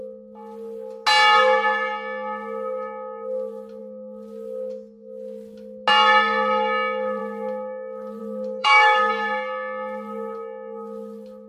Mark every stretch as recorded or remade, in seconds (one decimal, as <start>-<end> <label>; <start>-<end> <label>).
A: 0.0-8.6 recorded; 8.6-9.1 remade; 9.1-11.5 recorded